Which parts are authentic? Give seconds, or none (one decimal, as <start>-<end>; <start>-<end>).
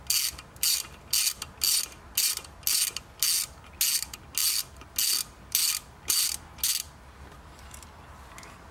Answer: 0.0-8.7